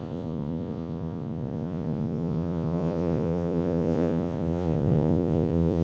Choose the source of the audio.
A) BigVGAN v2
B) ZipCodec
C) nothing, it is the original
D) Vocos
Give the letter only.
D